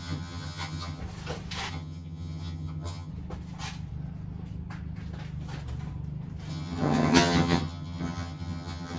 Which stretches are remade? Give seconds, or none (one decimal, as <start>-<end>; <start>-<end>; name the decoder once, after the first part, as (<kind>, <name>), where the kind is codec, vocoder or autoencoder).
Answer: 0.0-1.0 (vocoder, HiFi-GAN); 1.7-3.1; 6.5-9.0